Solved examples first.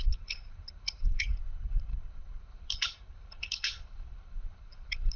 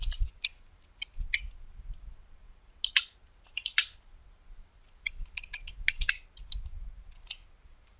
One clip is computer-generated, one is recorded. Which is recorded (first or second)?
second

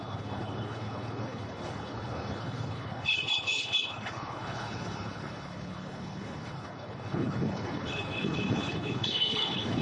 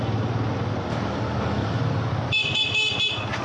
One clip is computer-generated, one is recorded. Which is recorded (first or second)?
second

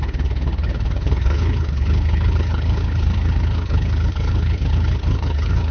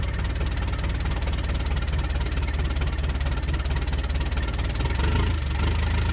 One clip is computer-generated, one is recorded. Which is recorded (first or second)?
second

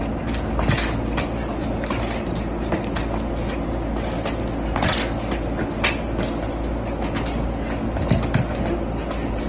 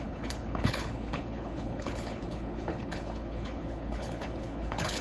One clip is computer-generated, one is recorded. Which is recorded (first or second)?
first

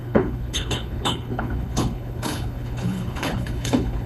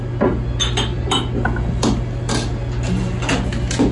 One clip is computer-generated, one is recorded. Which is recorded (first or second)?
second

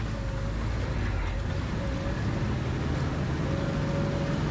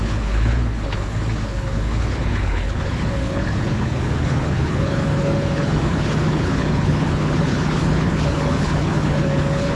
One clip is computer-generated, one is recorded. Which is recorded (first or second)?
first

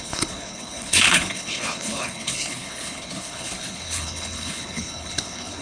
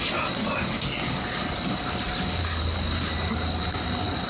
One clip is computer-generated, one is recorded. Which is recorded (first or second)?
second